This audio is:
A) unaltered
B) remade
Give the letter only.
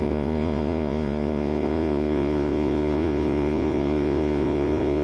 B